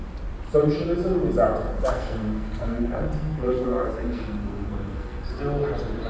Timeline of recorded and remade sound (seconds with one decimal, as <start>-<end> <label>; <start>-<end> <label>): 0.0-1.7 recorded; 1.7-5.3 remade; 5.3-6.1 recorded